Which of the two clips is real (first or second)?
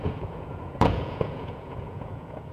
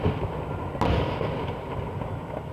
second